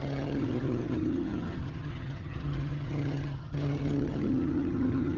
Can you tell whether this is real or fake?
fake